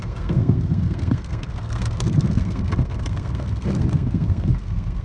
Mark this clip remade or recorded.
remade